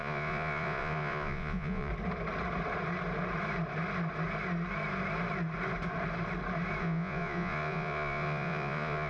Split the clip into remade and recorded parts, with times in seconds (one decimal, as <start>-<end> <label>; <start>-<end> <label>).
0.0-1.9 remade; 1.9-6.8 recorded; 6.8-9.1 remade